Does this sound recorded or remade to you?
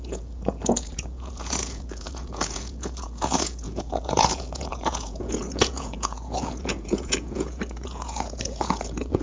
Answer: remade